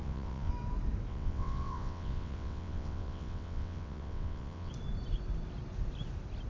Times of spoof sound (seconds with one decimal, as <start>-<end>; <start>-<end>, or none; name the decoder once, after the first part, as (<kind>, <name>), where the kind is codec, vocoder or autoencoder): 0.0-0.5 (vocoder, WaveNeXt); 1.1-4.7